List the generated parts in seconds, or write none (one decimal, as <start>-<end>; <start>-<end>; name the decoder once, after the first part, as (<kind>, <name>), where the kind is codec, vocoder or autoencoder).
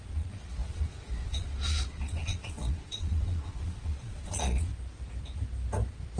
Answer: 0.0-4.7 (vocoder, Vocos)